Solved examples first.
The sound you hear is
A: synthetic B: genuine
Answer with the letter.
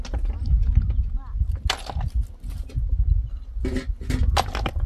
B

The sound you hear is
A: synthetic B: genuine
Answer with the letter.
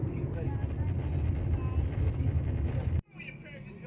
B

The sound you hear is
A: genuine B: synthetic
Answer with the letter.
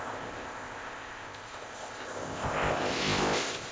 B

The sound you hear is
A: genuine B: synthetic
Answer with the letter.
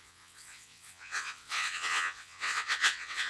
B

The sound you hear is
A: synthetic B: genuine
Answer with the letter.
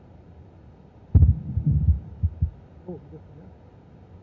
B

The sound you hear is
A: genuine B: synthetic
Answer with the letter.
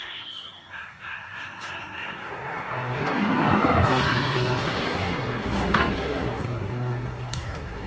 B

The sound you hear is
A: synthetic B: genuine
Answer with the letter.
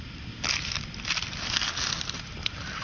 B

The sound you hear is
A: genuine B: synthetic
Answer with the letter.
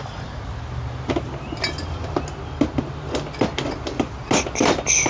A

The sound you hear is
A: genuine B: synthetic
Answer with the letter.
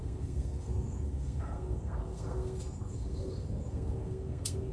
B